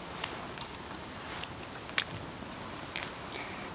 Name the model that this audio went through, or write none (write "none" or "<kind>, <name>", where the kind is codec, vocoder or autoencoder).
none